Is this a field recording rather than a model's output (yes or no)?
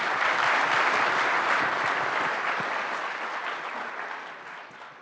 yes